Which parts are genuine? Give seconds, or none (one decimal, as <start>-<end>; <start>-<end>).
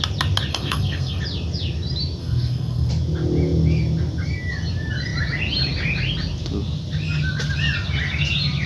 0.0-0.5; 1.2-2.2; 2.9-8.7